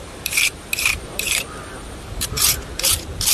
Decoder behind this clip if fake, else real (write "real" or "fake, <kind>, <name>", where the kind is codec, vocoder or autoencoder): fake, vocoder, BigVGAN v2